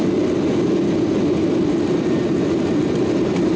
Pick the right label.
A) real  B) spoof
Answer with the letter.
A